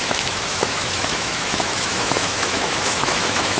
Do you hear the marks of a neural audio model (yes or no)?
yes